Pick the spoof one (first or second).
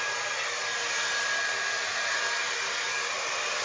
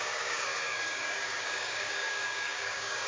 second